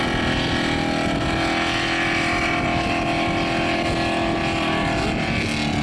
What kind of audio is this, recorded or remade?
recorded